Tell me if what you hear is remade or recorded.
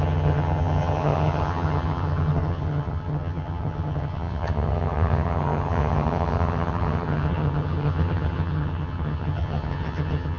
remade